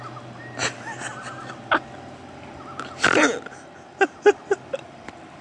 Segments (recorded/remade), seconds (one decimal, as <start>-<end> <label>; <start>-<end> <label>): 0.0-5.4 recorded